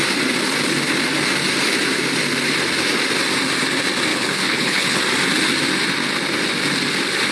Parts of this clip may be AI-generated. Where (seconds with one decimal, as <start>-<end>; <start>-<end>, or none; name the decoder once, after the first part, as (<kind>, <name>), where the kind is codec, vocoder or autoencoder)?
4.1-5.0 (codec, HILCodec)